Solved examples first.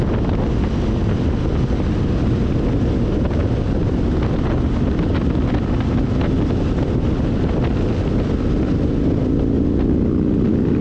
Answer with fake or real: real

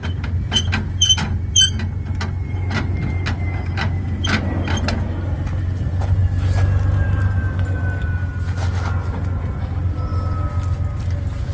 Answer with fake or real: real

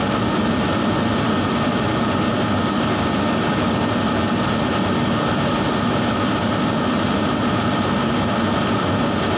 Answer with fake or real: real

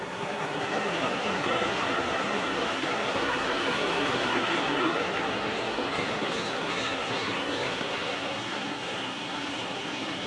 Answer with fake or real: fake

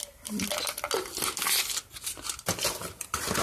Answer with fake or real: real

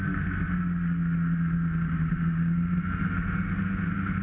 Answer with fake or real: real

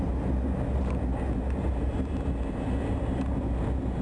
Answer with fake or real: real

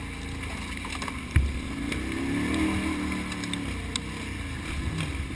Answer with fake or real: real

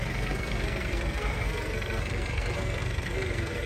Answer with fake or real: fake